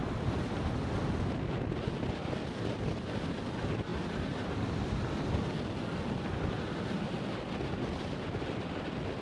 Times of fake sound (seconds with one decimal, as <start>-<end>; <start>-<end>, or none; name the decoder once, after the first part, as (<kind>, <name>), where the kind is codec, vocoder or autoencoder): 0.0-0.7 (vocoder, BigVGAN v2); 3.9-4.9